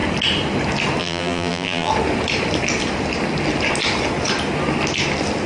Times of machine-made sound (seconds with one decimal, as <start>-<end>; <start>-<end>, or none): 1.0-1.9